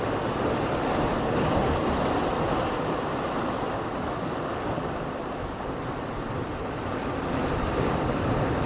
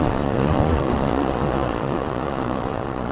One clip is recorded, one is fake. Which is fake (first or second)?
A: second